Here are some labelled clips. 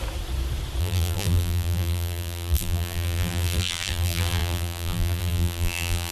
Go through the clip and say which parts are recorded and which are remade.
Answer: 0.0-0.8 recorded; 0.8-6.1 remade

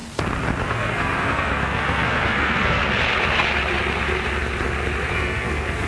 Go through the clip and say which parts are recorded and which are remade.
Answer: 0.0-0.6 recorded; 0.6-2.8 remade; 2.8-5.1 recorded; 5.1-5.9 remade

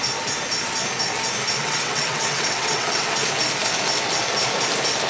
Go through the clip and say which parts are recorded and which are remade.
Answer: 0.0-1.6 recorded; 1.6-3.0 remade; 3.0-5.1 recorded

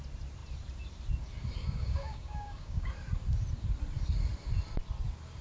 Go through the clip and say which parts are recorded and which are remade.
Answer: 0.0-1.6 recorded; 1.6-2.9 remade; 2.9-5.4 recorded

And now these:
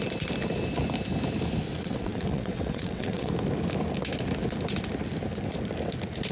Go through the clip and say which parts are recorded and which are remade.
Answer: 0.0-1.7 recorded; 1.7-3.3 remade; 3.3-6.3 recorded

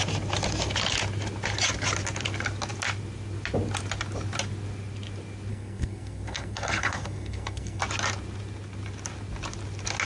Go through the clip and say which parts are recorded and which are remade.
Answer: 0.0-5.5 recorded; 5.5-7.8 remade; 7.8-10.0 recorded

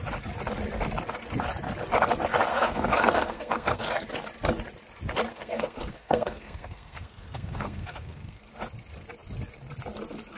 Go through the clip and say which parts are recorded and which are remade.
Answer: 0.0-2.5 recorded; 2.5-3.9 remade; 3.9-5.3 recorded; 5.3-8.4 remade; 8.4-10.4 recorded

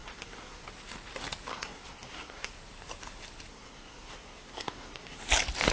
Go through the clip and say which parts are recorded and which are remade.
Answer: 0.0-0.6 remade; 0.6-1.5 recorded; 1.5-2.5 remade; 2.5-3.5 recorded; 3.5-5.2 remade; 5.2-5.7 recorded